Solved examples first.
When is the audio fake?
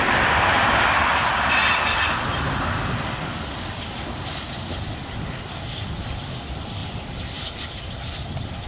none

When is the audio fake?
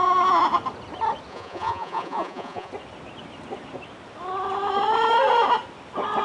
1.3-2.7 (vocoder, Vocos)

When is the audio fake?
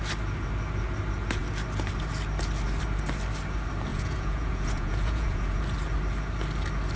3.9-5.6 (vocoder, Vocos)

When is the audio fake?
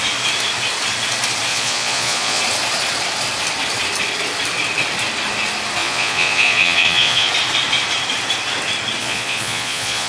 1.5-2.4 (vocoder, Vocos); 5.8-7.3; 9.0-10.1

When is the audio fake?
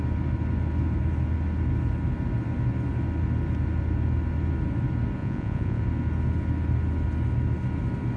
5.2-5.8 (vocoder, Vocos)